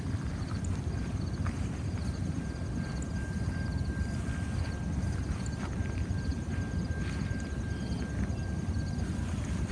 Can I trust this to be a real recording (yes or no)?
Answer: yes